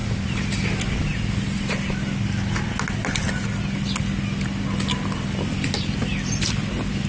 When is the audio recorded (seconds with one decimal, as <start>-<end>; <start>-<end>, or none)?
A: 0.0-7.1